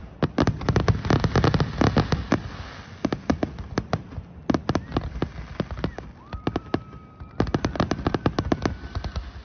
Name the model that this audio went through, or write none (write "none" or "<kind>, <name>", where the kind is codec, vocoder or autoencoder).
none